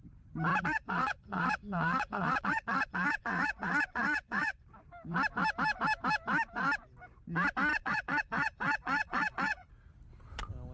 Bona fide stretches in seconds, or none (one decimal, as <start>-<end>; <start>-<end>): 0.0-0.5; 4.6-7.7; 9.7-10.7